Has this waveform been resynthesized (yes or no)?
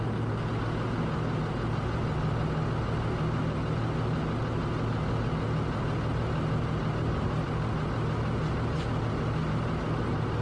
no